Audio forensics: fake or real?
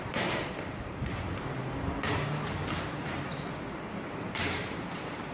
fake